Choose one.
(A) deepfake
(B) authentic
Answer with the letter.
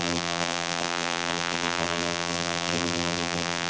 A